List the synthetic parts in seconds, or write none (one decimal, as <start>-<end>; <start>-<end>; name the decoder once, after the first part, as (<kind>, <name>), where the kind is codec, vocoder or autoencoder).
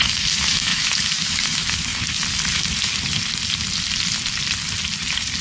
0.0-1.9 (autoencoder, DAC-VAE)